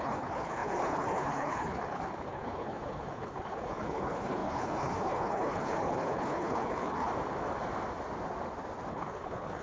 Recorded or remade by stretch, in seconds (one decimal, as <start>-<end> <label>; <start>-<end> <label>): 0.0-7.1 remade; 7.1-8.9 recorded; 8.9-9.6 remade